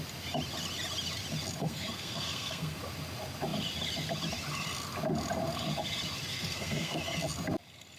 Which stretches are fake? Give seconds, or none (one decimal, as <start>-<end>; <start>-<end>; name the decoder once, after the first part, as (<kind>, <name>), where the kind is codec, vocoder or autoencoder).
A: 1.6-2.8 (codec, SNAC); 6.3-7.0